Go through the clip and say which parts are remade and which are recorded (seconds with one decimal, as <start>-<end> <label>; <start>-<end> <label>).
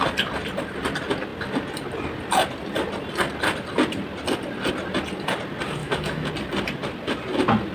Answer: 0.0-5.8 recorded; 5.8-6.3 remade; 6.3-7.7 recorded